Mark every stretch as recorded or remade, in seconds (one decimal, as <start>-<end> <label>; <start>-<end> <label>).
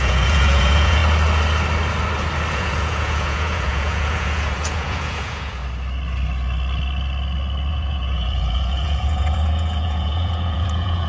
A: 0.0-1.0 remade; 1.0-2.5 recorded; 2.5-5.6 remade; 5.6-7.7 recorded; 7.7-11.1 remade